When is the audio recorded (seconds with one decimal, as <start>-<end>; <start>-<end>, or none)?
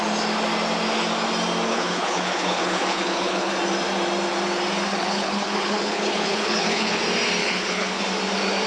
0.0-1.7; 3.5-4.9; 7.0-7.4; 8.0-8.7